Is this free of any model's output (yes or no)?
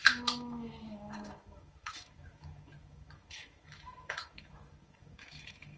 no